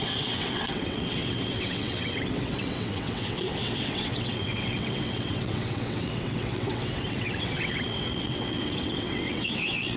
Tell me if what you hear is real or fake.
fake